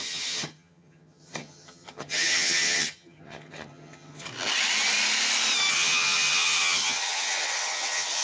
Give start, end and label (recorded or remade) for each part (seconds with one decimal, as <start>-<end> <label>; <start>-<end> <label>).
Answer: 0.0-4.3 remade; 4.3-5.7 recorded; 5.7-8.2 remade